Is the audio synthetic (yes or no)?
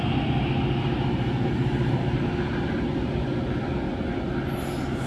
no